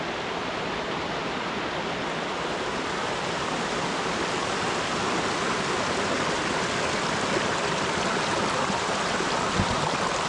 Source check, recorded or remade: recorded